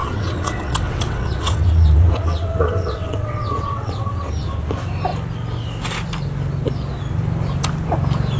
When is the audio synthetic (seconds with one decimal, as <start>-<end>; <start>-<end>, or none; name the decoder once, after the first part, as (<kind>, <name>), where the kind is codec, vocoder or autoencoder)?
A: 0.0-4.3 (vocoder, WaveNeXt)